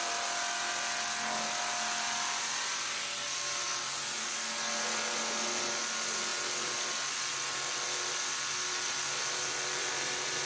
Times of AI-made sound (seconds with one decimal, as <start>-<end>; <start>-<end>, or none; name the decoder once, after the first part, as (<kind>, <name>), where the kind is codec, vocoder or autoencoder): none